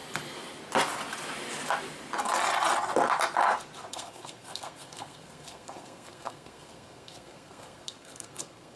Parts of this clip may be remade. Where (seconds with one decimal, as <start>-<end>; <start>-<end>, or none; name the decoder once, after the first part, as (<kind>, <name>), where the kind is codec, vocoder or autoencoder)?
3.9-8.8 (codec, SNAC)